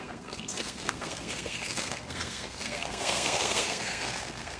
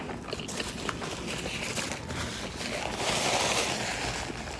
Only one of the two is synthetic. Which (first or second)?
first